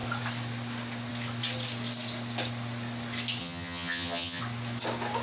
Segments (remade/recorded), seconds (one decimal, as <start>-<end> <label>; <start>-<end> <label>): 0.0-3.4 recorded; 3.4-4.4 remade; 4.4-5.2 recorded